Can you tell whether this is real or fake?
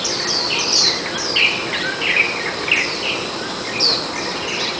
fake